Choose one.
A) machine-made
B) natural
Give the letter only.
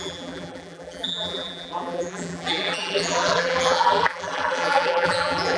A